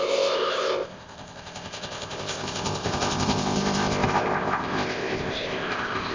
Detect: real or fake fake